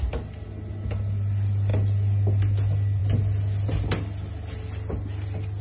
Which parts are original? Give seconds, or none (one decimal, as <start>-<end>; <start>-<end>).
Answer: 0.0-5.6